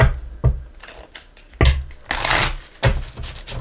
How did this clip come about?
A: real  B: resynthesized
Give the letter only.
A